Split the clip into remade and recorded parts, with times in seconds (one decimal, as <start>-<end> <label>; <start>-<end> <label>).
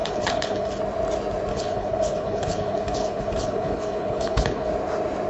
0.0-0.8 remade; 0.8-1.5 recorded; 1.5-4.7 remade; 4.7-5.3 recorded